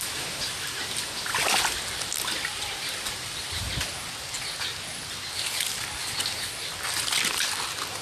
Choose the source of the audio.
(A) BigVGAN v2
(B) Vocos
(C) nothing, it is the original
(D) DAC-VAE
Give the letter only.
C